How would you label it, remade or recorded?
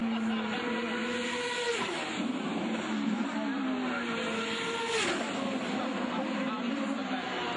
recorded